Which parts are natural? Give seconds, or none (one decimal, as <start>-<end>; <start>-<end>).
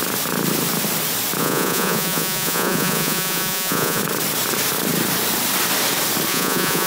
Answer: 0.0-1.4; 4.0-6.3